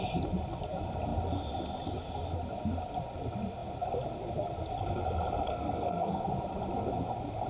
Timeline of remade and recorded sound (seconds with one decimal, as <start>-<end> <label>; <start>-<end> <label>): 0.0-5.5 recorded; 5.5-6.2 remade; 6.2-7.5 recorded